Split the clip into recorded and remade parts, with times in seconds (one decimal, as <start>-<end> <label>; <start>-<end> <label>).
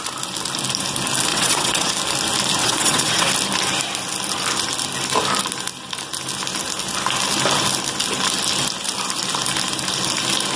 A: 0.0-1.3 recorded; 1.3-1.9 remade; 1.9-2.6 recorded; 2.6-3.3 remade; 3.3-10.6 recorded